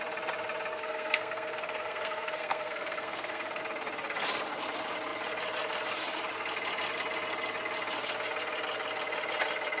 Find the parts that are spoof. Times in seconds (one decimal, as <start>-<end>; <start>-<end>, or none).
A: 0.7-3.6

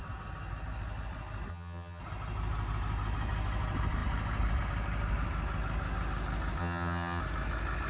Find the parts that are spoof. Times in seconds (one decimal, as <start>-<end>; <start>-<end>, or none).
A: 1.5-2.0; 6.6-7.2